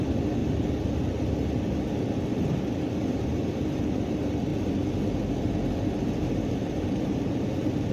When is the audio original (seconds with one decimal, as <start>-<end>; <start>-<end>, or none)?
0.4-3.0; 4.5-6.5